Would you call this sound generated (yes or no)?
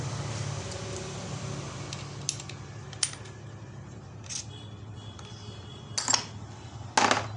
no